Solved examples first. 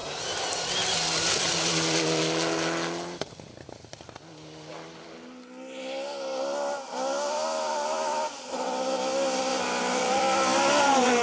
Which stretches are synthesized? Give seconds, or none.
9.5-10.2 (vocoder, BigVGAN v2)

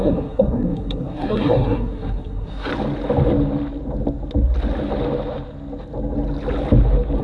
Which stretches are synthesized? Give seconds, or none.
0.0-2.7 (codec, SNAC)

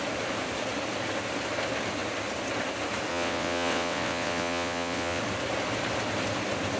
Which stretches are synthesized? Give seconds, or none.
3.1-5.2 (vocoder, WaveNeXt)

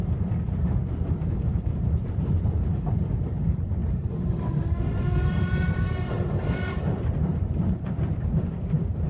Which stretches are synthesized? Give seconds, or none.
0.0-9.1 (vocoder, BigVGAN v2)

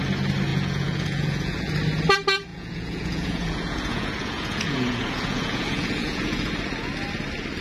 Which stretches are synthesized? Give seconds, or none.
0.5-1.7 (vocoder, Vocos); 2.5-6.5

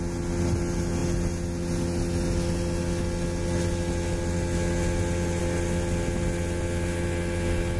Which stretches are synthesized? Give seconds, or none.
none

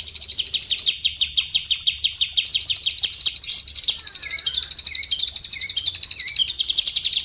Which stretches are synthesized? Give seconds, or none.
none